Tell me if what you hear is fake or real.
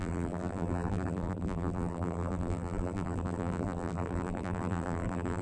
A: fake